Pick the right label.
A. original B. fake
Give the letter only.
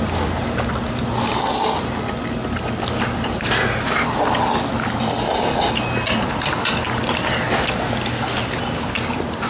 A